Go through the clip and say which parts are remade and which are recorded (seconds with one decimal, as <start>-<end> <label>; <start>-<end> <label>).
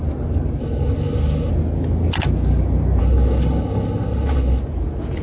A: 0.0-0.6 recorded; 0.6-1.5 remade; 1.5-3.0 recorded; 3.0-4.6 remade; 4.6-5.2 recorded